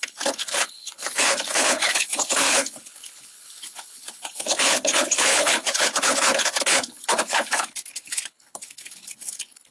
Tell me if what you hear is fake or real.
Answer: fake